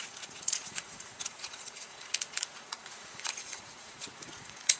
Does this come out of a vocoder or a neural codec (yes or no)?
yes